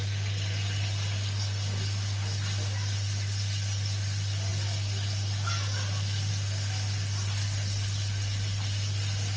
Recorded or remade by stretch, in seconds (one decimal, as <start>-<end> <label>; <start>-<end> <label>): 0.0-9.4 recorded